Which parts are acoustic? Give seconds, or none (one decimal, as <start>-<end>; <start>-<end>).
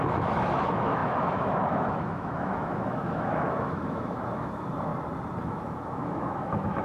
4.9-5.4